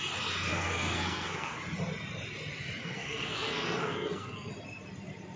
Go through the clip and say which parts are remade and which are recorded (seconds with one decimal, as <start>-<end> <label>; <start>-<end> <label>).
0.0-0.5 recorded; 0.5-1.6 remade; 1.6-2.8 recorded; 2.8-4.5 remade; 4.5-5.4 recorded